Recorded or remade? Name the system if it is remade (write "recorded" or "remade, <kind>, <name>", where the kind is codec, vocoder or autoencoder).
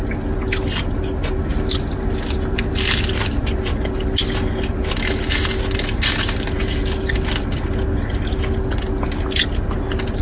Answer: recorded